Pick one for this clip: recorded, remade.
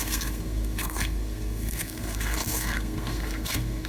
remade